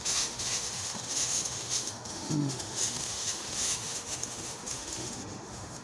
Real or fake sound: fake